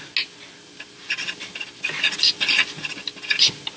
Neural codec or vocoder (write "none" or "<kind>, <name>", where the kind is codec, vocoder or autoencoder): none